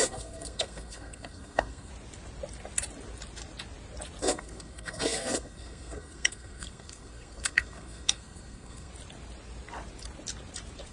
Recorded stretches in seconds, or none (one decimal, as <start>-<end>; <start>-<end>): 1.9-4.2; 8.9-10.9